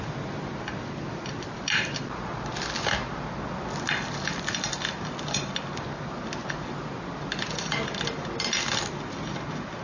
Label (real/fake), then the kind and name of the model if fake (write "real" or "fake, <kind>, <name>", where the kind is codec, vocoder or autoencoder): real